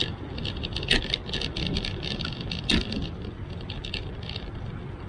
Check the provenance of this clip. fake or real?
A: real